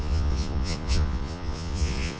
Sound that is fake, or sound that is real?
fake